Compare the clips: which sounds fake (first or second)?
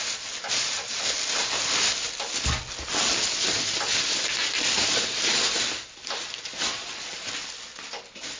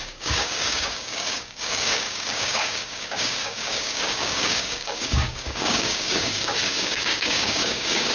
second